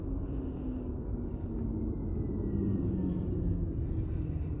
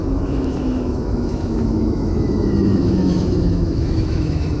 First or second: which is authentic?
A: first